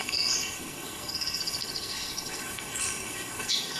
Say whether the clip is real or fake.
fake